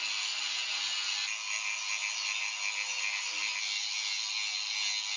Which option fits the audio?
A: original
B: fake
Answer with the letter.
A